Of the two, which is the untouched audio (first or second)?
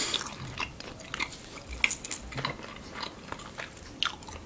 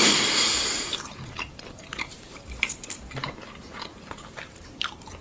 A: first